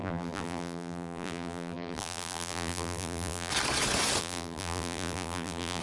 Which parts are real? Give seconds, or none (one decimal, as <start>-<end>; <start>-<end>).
3.5-4.2

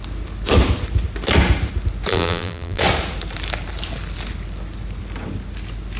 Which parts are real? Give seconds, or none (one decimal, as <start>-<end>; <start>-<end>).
0.0-2.1; 2.8-6.0

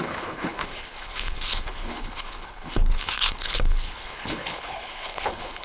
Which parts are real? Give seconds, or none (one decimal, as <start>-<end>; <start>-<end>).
none

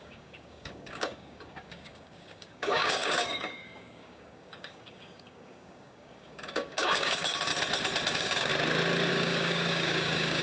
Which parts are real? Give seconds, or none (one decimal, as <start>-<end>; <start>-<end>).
7.5-8.1; 8.5-9.1

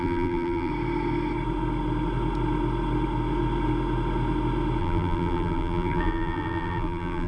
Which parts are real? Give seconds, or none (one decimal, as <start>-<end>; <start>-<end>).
0.7-4.8

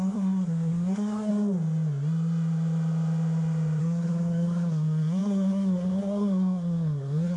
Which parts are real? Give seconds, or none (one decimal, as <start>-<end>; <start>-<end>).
1.3-3.8

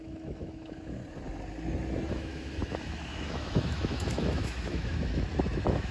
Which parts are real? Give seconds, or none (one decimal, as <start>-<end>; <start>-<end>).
1.0-2.1

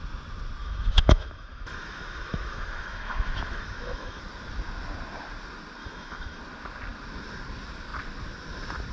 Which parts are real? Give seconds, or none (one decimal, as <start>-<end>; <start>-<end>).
0.0-0.6; 4.2-5.8; 6.4-8.9